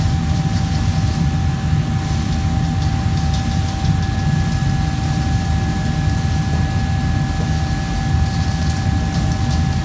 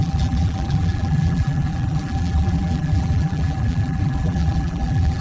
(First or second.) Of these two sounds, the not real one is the second